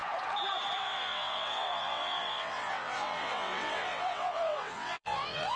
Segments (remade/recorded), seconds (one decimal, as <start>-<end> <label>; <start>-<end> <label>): 0.0-0.8 recorded; 0.8-5.6 remade

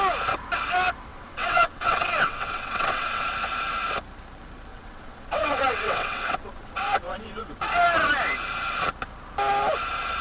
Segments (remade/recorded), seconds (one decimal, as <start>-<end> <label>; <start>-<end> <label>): 0.0-1.1 recorded; 1.1-3.3 remade; 3.3-4.7 recorded; 4.7-7.6 remade; 7.6-10.2 recorded

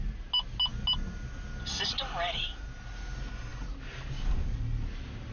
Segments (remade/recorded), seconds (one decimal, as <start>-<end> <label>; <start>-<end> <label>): 0.0-5.3 recorded

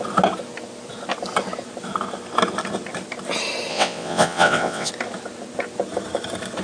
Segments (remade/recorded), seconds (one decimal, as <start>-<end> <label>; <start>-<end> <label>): 0.0-3.7 recorded; 3.7-4.9 remade; 4.9-6.6 recorded

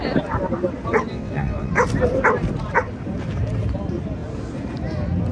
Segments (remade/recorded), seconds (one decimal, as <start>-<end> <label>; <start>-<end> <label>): 0.0-1.1 recorded; 1.1-1.7 remade; 1.7-5.3 recorded